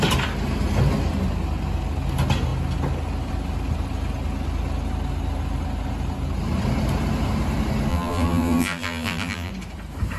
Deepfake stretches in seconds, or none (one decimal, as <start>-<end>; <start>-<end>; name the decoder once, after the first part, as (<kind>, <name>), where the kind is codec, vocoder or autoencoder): 7.9-9.5 (vocoder, BigVGAN v2)